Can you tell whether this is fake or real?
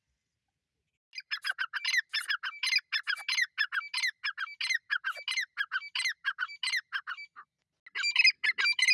real